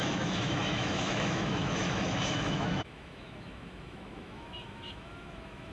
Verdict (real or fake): fake